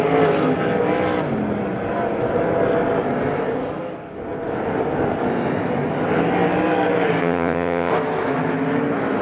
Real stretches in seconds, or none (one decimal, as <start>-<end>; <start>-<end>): 0.0-7.2; 7.9-9.2